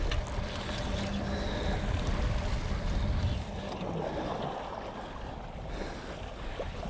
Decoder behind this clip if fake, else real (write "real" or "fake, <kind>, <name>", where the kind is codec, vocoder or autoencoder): real